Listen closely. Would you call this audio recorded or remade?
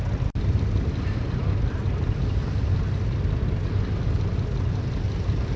recorded